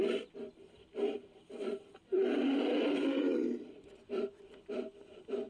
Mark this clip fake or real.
real